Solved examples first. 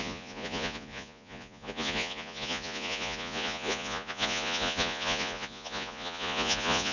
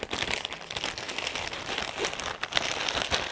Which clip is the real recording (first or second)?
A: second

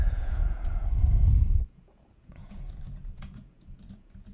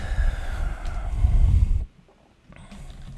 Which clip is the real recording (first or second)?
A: second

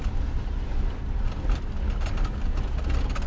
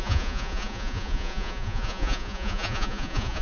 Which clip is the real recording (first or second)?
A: first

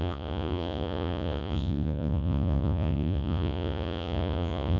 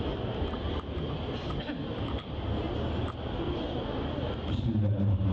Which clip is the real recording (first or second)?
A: second